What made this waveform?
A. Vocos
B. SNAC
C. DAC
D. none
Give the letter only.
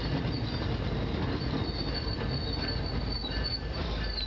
D